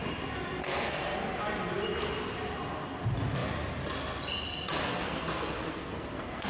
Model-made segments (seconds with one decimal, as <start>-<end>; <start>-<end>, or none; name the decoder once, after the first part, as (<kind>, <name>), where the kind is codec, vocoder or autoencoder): 0.6-1.4 (codec, SNAC); 4.9-6.5